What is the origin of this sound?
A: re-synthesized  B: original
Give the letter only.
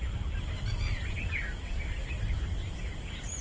B